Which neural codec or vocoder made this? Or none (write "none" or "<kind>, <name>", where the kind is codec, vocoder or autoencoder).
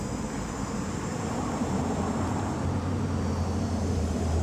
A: vocoder, BigVGAN v2